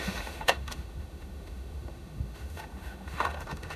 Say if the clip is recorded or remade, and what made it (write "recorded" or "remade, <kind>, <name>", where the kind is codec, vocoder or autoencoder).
remade, autoencoder, DAC-VAE